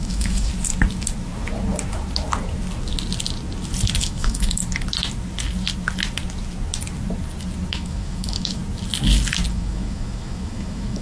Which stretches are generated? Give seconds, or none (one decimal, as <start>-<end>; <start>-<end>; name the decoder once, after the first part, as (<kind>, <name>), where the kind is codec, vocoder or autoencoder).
0.0-0.5 (autoencoder, DAC-VAE); 4.0-4.6; 7.7-8.6; 9.5-11.0